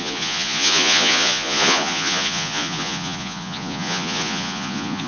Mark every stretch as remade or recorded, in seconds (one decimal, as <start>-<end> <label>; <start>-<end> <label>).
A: 0.0-5.1 remade